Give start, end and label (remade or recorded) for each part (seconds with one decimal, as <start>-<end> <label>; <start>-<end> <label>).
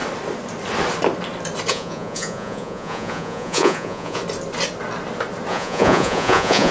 0.0-1.7 recorded; 1.7-4.2 remade; 4.2-5.5 recorded; 5.5-6.7 remade